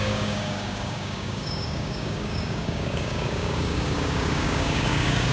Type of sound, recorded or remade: remade